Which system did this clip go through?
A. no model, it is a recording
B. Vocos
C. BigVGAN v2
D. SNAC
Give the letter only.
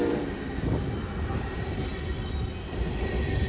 C